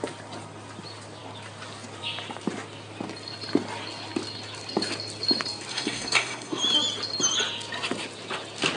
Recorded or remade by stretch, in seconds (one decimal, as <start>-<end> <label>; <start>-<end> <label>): 0.0-5.7 recorded; 5.7-6.6 remade; 6.6-8.8 recorded